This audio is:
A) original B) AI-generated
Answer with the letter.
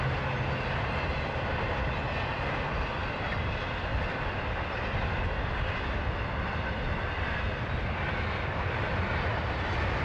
A